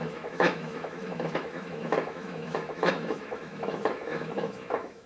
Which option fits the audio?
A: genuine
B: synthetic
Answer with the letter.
B